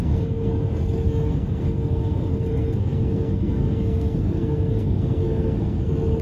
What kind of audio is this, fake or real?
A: fake